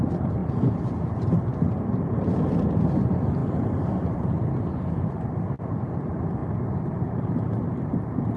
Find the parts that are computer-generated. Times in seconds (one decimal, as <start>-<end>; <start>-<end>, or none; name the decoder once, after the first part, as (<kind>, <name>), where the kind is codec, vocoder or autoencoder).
3.4-5.3 (vocoder, BigVGAN v2)